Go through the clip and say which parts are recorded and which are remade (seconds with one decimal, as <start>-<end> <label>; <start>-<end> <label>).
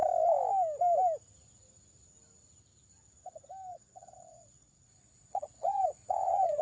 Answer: 0.0-3.7 recorded; 3.7-6.6 remade